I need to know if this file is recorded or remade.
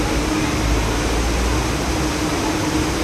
recorded